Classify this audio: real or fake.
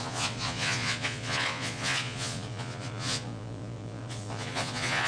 fake